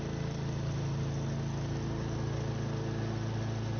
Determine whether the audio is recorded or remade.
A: recorded